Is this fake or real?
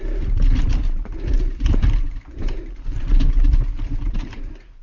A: fake